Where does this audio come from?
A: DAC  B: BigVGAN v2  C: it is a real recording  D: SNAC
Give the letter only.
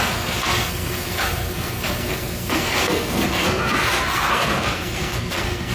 D